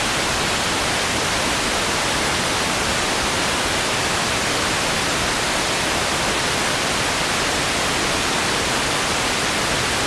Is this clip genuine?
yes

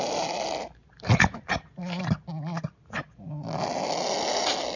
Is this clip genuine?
yes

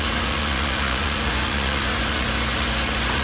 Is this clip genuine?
no